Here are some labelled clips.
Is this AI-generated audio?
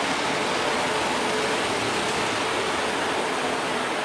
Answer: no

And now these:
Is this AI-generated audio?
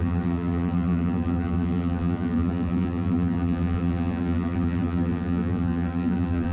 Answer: yes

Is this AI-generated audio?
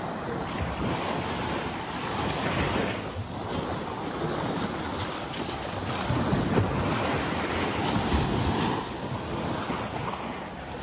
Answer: no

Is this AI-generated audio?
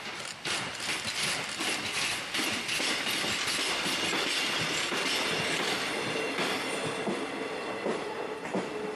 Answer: no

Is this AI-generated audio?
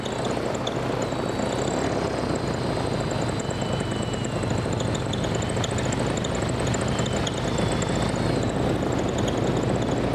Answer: no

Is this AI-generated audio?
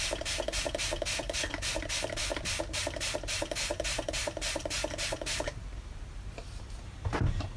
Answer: yes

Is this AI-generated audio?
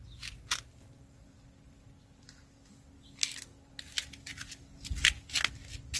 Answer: no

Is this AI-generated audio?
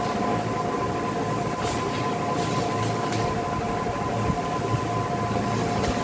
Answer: no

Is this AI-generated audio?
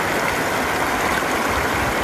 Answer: no